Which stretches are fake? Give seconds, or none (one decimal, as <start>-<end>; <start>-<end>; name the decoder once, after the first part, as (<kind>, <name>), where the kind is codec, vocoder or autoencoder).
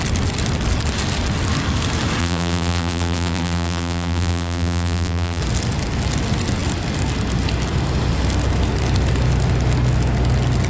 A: 2.2-5.4 (vocoder, BigVGAN v2)